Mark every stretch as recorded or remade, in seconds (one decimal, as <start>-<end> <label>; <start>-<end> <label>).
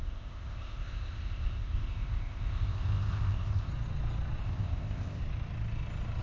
0.0-3.7 remade; 3.7-4.4 recorded; 4.4-5.2 remade; 5.2-6.2 recorded